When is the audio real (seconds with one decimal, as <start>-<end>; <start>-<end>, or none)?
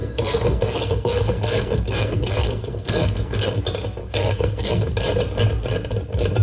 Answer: 3.6-4.0; 4.9-6.4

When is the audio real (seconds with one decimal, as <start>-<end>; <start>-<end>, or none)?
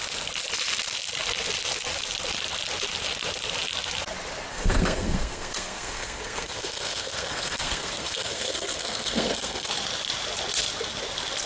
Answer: 0.0-4.5; 9.7-11.5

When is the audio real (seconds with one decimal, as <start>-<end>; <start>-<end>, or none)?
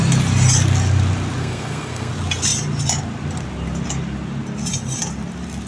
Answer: 0.0-1.4; 2.1-5.7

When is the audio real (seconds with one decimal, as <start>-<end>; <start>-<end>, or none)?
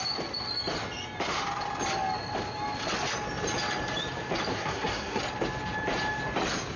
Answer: 0.0-4.5; 5.2-6.8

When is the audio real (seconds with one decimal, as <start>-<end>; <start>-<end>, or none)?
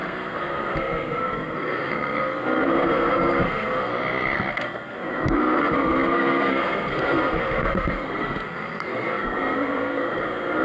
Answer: 3.9-4.5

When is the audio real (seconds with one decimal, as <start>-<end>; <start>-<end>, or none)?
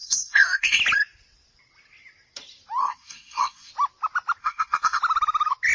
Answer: 0.8-2.8; 3.7-4.4; 5.0-5.7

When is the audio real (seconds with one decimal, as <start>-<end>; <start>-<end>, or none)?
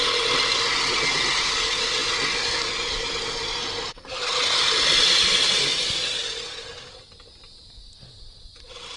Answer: 0.0-9.0